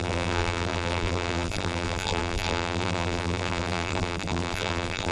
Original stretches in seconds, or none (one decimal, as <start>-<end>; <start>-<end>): none